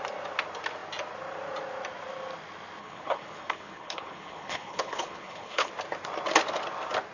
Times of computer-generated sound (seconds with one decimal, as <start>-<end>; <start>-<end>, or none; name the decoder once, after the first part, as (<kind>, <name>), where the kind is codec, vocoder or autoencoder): 2.8-5.7 (codec, HILCodec)